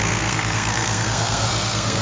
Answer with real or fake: fake